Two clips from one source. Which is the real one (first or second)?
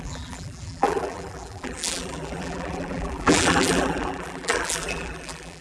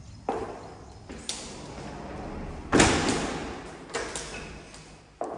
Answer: second